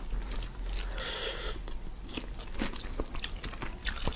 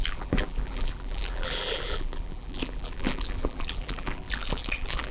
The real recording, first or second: first